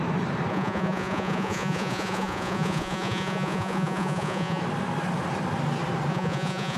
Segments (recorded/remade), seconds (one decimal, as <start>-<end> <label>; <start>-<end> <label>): 0.0-0.5 recorded; 0.5-4.6 remade; 4.6-6.1 recorded; 6.1-6.8 remade